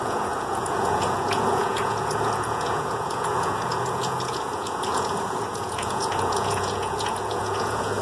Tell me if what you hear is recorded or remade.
remade